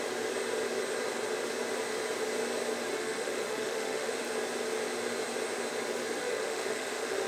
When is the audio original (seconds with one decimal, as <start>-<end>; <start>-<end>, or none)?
0.0-2.9; 4.2-6.2